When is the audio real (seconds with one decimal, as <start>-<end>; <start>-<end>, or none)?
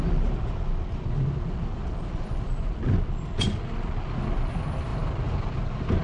0.0-6.0